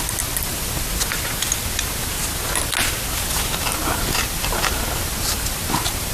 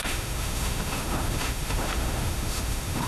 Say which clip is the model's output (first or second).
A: second